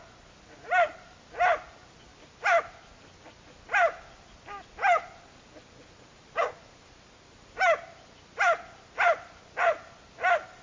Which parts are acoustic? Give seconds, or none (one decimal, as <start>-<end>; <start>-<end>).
0.0-10.6